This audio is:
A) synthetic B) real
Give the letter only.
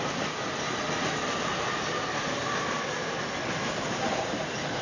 B